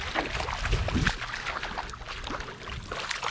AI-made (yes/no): no